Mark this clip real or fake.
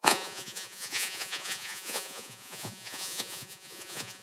fake